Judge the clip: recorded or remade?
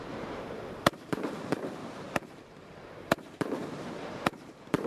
remade